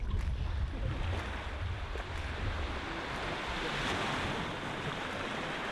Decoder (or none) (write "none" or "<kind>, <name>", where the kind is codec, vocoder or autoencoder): none